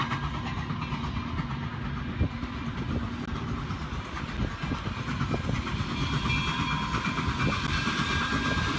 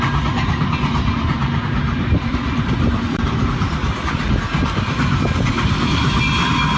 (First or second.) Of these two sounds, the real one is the first